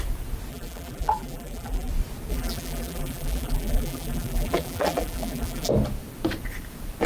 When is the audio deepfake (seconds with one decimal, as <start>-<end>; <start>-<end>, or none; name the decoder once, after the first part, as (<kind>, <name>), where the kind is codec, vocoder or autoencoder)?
0.5-1.9 (vocoder, BigVGAN v2); 2.3-5.7